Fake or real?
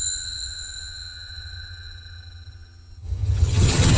fake